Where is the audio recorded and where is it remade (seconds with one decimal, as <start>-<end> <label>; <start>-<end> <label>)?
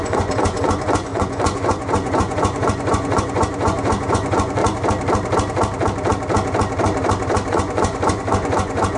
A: 0.0-4.6 remade; 4.6-7.5 recorded; 7.5-9.0 remade